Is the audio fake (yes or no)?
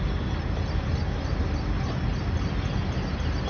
no